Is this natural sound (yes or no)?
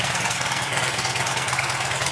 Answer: no